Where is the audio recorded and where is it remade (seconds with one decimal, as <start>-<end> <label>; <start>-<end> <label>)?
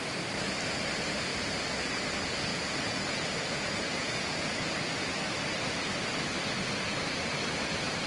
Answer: 0.0-2.5 recorded; 2.5-4.5 remade; 4.5-8.1 recorded